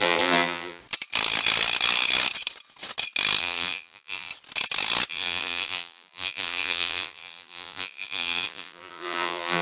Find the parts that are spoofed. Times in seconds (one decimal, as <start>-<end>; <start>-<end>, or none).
0.0-0.8; 3.4-4.3; 5.1-9.6